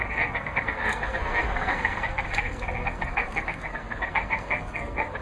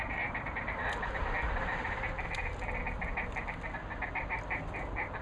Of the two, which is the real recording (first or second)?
second